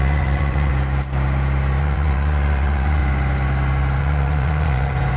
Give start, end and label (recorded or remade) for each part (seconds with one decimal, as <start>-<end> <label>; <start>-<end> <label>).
0.0-0.7 remade; 0.7-1.8 recorded; 1.8-3.0 remade; 3.0-4.0 recorded; 4.0-5.2 remade